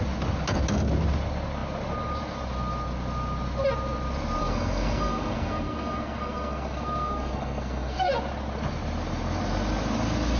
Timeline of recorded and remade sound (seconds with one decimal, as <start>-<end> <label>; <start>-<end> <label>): 0.0-4.4 recorded; 4.4-8.1 remade; 8.1-10.4 recorded